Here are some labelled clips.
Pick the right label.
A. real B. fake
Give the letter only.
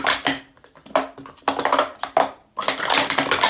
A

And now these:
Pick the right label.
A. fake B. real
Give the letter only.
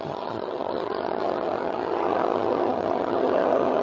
A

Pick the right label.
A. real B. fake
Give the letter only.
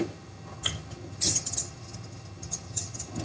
B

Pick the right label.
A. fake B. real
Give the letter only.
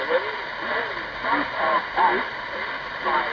B